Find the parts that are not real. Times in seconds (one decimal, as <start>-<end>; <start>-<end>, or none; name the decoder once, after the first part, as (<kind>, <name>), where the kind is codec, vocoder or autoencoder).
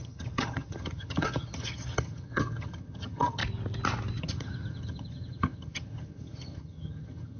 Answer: 0.0-3.4 (vocoder, HiFi-GAN); 4.2-7.4